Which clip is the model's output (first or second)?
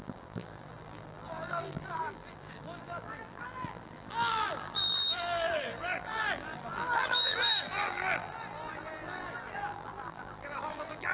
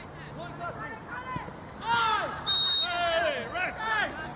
first